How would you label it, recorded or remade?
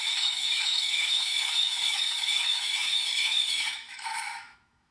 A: remade